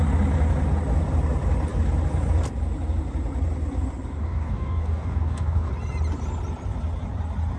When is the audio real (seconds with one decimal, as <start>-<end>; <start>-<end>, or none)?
0.0-4.2; 5.7-7.6